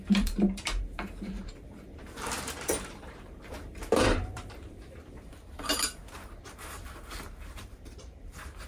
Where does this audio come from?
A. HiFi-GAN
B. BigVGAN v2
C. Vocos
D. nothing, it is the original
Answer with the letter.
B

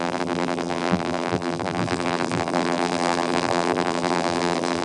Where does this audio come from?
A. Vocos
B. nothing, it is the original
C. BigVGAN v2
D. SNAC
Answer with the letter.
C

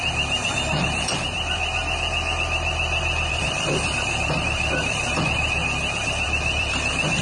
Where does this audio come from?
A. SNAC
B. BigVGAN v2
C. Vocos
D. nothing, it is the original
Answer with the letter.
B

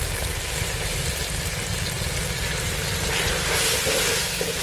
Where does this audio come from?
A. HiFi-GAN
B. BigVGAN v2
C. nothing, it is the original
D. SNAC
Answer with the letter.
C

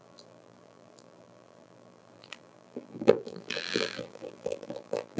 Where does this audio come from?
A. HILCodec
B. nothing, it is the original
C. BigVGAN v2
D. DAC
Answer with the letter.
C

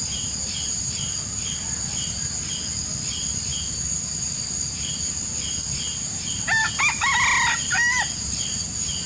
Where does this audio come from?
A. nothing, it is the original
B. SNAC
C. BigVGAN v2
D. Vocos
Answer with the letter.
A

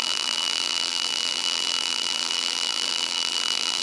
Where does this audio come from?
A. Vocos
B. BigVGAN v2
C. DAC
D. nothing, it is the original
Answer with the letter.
B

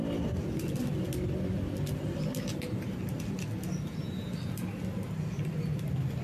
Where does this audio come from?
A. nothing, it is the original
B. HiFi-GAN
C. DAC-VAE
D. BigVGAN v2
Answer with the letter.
A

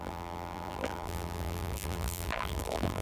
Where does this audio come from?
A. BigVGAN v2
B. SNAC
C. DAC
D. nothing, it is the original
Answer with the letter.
A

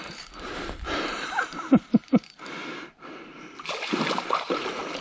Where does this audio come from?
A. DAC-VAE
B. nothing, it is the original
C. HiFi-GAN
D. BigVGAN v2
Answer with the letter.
D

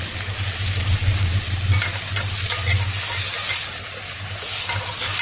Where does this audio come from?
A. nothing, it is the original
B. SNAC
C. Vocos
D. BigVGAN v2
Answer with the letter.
A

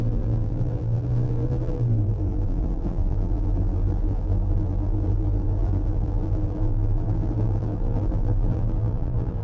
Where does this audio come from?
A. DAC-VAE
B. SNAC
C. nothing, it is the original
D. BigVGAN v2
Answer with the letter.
D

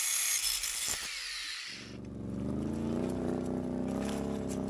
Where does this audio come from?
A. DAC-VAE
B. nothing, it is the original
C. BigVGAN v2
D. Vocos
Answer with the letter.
B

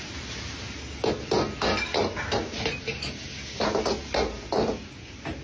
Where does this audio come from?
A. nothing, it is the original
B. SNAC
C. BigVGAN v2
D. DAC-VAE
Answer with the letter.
A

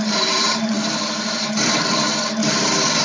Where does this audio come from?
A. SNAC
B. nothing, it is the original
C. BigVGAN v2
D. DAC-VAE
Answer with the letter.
C